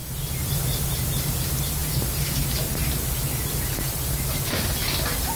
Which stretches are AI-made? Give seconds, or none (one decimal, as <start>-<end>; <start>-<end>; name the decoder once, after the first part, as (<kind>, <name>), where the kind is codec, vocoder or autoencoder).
none